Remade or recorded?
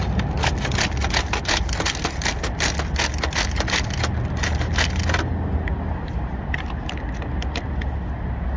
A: recorded